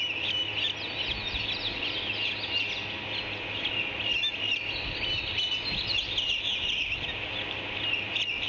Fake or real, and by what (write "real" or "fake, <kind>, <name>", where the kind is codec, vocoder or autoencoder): real